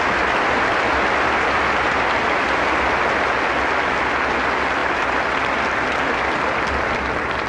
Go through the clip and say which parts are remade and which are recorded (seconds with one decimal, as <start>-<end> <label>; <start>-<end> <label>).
0.0-7.5 recorded